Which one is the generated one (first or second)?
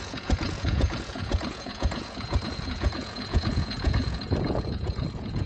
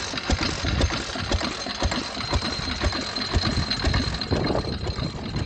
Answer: first